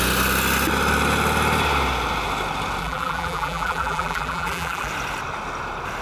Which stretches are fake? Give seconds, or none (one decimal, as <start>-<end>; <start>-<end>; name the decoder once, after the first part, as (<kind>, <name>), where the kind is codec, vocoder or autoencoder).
2.8-4.9 (vocoder, BigVGAN v2)